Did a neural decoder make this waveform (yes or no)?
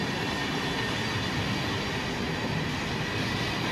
no